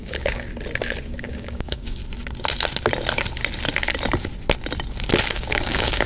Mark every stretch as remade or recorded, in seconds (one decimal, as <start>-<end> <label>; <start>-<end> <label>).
0.0-0.5 remade; 0.5-1.0 recorded; 1.0-2.0 remade; 2.0-5.3 recorded; 5.3-6.1 remade